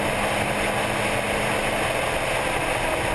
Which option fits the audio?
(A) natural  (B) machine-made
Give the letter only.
A